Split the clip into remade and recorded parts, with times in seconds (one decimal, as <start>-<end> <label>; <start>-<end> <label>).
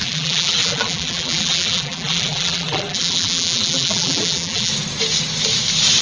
0.0-4.7 remade; 4.7-6.0 recorded